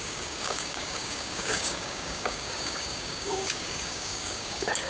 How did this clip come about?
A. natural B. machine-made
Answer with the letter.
B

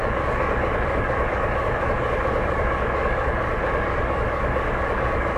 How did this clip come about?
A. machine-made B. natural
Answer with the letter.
A